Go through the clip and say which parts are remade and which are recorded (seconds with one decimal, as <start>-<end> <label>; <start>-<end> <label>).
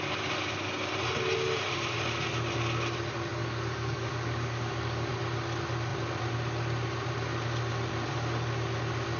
0.0-3.3 recorded; 3.3-5.1 remade; 5.1-9.2 recorded